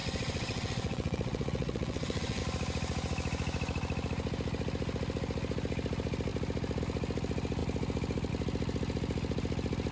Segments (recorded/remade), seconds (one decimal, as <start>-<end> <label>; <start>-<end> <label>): 0.0-2.4 remade; 2.4-9.9 recorded